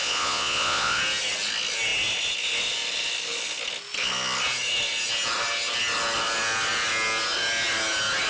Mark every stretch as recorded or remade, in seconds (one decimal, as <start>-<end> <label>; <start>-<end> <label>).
0.0-1.0 remade; 1.0-8.3 recorded